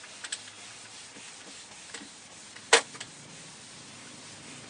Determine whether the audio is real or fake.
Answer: real